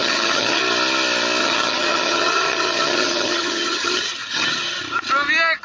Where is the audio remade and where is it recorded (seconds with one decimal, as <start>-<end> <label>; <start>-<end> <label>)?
0.0-0.6 remade; 0.6-1.4 recorded; 1.4-4.8 remade; 4.8-5.6 recorded